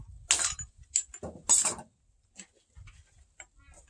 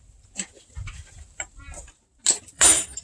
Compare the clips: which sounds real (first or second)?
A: first